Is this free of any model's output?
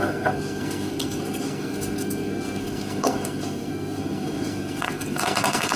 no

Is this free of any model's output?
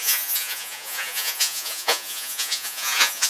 no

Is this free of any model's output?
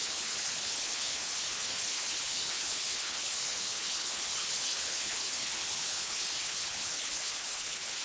no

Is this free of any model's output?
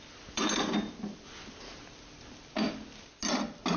yes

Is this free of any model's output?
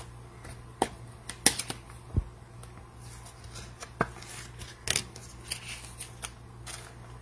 yes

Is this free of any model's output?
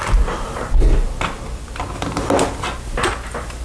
yes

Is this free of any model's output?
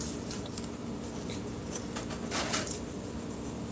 yes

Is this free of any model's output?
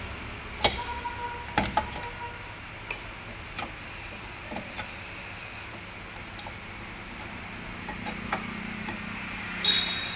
yes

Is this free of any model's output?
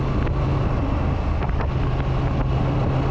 yes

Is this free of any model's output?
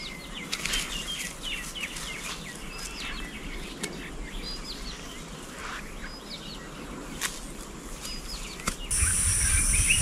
yes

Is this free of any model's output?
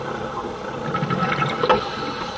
yes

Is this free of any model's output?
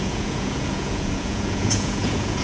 no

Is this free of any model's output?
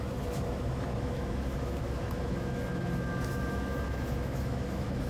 no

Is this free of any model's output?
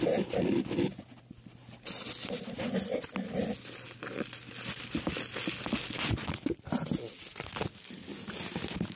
yes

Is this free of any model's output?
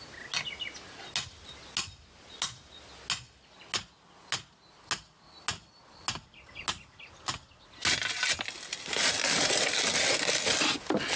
yes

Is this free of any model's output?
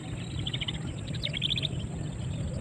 yes